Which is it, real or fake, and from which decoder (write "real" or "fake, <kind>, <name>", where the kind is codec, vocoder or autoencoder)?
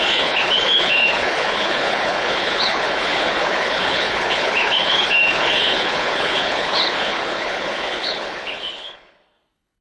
fake, codec, HILCodec